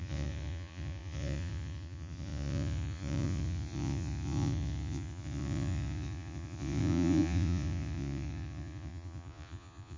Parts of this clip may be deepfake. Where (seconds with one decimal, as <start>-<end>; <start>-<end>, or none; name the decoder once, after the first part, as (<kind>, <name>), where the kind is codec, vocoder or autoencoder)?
0.0-10.0 (vocoder, Vocos)